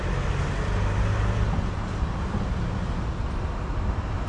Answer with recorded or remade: recorded